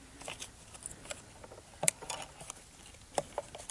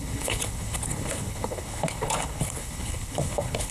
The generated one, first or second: second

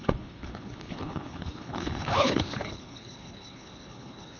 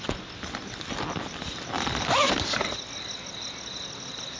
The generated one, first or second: first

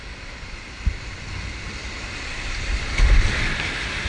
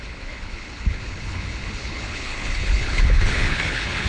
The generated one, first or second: second